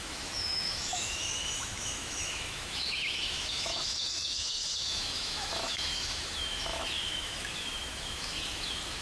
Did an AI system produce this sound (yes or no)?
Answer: yes